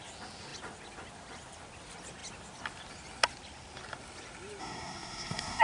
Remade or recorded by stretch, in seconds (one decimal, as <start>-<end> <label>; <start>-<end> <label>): 0.0-4.6 recorded; 4.6-5.6 remade